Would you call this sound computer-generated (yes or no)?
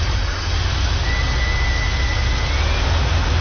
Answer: no